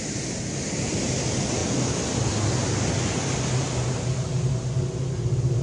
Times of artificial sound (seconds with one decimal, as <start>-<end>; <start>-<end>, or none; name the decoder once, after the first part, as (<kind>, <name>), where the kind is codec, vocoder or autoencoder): none